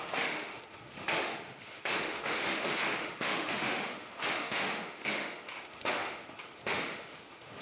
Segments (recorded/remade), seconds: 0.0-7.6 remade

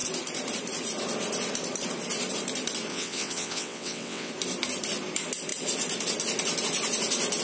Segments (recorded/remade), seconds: 0.0-2.9 recorded; 2.9-4.3 remade; 4.3-7.4 recorded

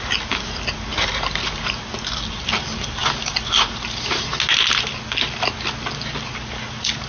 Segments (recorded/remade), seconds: 0.0-0.9 recorded; 0.9-1.8 remade; 1.8-3.0 recorded; 3.0-4.2 remade; 4.2-7.1 recorded